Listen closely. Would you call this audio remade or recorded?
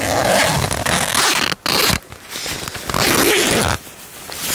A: recorded